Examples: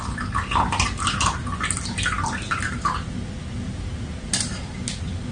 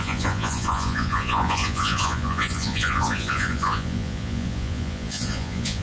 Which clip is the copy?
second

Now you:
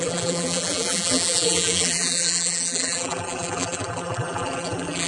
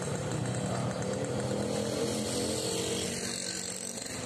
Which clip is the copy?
first